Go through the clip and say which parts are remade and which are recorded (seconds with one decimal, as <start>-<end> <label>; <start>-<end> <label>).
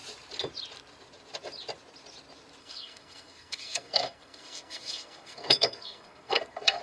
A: 0.0-2.6 recorded; 2.6-6.8 remade